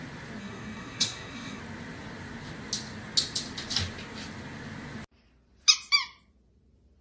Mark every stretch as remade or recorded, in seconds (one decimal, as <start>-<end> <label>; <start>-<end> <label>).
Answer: 0.0-0.4 recorded; 0.4-1.6 remade; 1.6-7.0 recorded